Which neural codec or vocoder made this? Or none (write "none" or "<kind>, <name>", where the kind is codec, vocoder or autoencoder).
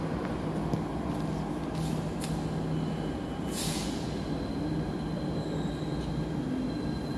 none